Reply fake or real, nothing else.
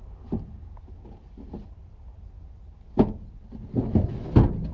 real